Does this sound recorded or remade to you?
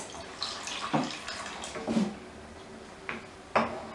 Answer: recorded